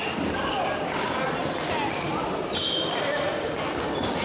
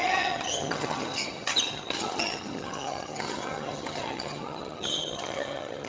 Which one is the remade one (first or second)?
second